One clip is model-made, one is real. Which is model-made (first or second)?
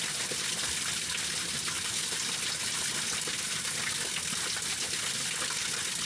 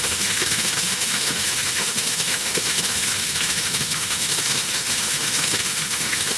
second